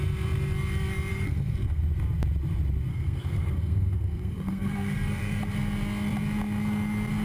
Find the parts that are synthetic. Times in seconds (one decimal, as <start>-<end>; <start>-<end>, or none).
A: 1.1-1.8; 2.9-5.4